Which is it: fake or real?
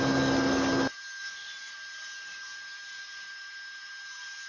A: real